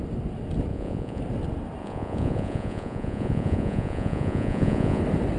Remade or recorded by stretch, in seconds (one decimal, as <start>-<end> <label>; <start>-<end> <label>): 0.0-0.7 recorded; 0.7-1.2 remade; 1.2-1.8 recorded; 1.8-5.0 remade; 5.0-5.4 recorded